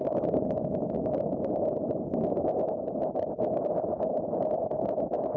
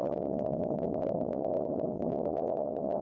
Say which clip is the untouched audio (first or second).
first